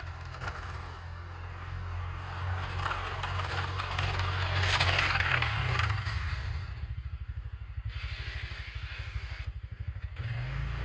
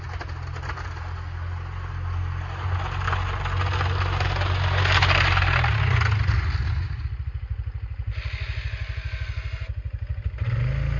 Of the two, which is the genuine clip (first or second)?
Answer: second